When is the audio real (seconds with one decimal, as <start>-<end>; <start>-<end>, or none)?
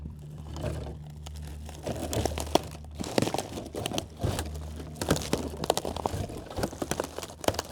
0.9-1.5; 2.0-5.1